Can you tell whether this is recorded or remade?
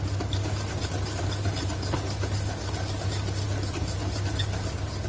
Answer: recorded